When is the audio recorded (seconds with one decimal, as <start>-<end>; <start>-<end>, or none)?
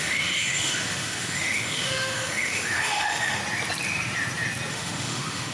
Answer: 3.4-4.7